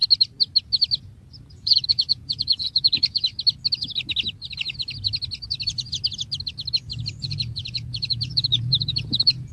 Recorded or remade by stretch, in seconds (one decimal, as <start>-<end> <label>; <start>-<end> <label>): 0.0-1.5 recorded; 1.5-3.3 remade; 3.3-7.1 recorded; 7.1-9.5 remade